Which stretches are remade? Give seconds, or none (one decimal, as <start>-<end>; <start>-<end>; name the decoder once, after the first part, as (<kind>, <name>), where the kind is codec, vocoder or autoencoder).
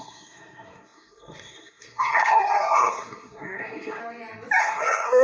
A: 0.0-4.0 (codec, SNAC); 4.6-5.2